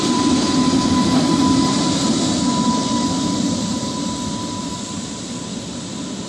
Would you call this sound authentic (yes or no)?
no